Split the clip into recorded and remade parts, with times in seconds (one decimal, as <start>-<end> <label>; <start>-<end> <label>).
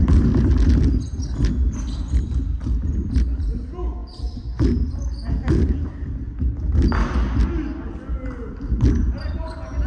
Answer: 0.0-3.0 recorded; 3.0-3.6 remade; 3.6-9.9 recorded